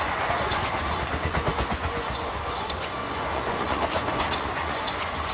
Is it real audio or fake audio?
fake